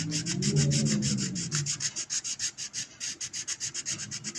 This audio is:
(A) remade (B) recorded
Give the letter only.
B